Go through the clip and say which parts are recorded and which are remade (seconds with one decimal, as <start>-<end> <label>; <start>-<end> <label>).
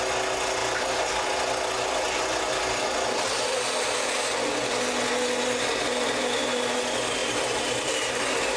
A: 0.0-7.2 recorded; 7.2-8.2 remade; 8.2-8.6 recorded